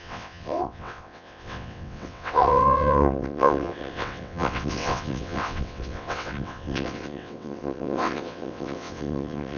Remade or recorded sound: remade